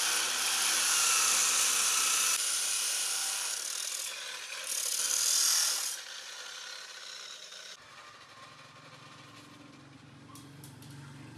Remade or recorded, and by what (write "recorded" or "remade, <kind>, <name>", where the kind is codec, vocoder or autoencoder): recorded